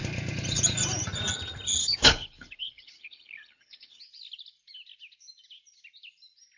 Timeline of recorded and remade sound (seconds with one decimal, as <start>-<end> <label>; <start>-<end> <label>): 0.0-1.8 recorded; 1.8-4.0 remade; 4.0-6.6 recorded